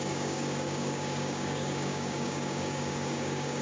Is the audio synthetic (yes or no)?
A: yes